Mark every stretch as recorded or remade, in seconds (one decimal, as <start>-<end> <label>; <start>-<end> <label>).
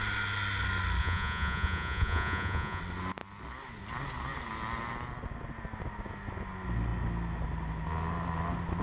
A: 0.0-1.0 recorded; 1.0-2.8 remade; 2.8-8.8 recorded